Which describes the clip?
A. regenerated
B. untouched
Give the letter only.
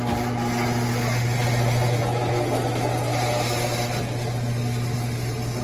B